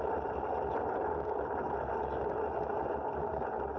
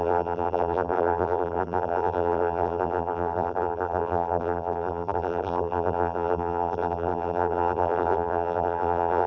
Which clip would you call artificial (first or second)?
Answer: second